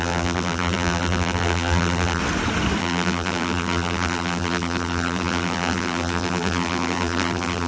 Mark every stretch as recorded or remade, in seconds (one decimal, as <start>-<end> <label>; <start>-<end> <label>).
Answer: 0.0-2.2 remade; 2.2-2.8 recorded; 2.8-7.7 remade